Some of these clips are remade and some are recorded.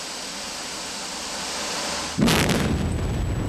recorded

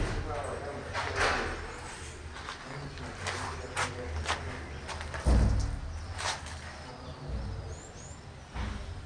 recorded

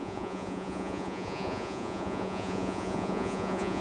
remade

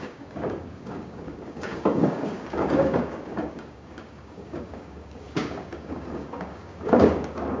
remade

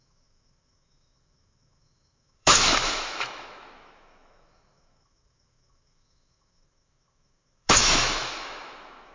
remade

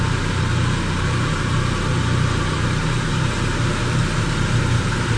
remade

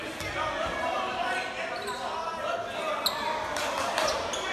recorded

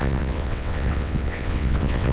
remade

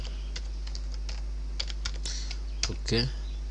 recorded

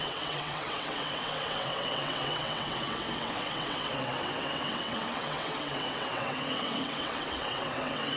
remade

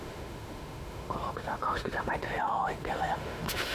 remade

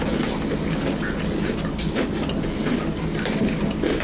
recorded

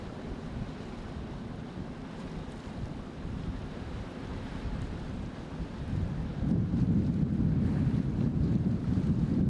remade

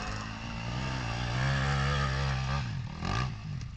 recorded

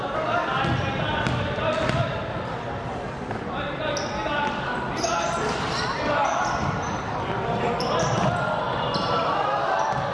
recorded